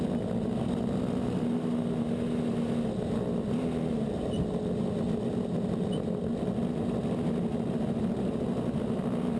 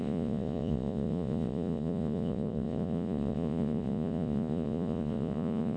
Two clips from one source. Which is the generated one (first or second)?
second